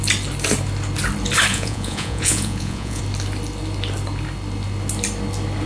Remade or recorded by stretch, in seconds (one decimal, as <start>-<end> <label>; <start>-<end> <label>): 0.0-1.5 recorded; 1.5-3.0 remade; 3.0-5.7 recorded